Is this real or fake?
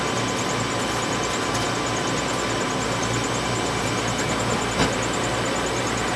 real